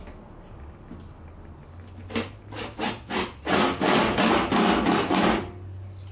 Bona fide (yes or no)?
yes